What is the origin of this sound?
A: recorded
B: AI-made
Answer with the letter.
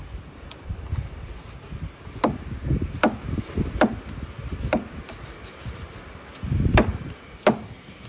A